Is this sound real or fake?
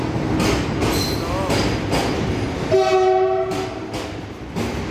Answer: real